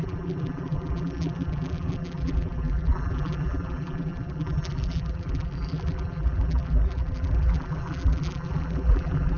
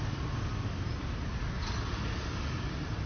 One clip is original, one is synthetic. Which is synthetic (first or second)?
first